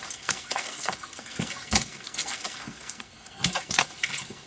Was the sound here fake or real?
fake